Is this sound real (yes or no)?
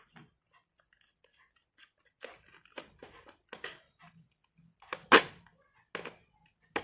yes